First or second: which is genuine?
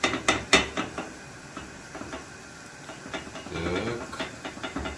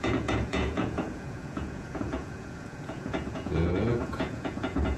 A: first